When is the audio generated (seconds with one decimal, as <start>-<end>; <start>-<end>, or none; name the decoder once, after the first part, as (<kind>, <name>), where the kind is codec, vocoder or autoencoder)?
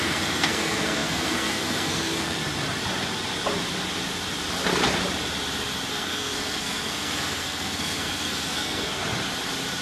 0.0-2.4 (codec, SNAC); 5.9-9.0